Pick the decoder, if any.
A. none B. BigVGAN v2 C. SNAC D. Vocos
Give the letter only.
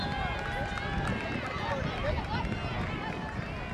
A